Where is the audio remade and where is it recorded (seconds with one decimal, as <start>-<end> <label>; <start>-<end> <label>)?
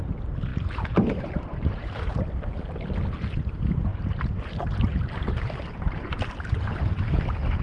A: 0.0-0.5 recorded; 0.5-2.1 remade; 2.1-3.9 recorded; 3.9-7.1 remade; 7.1-7.6 recorded